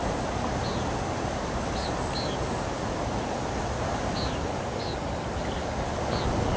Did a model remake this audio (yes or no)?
no